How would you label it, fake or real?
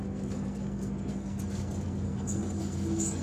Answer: fake